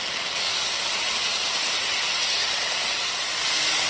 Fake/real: real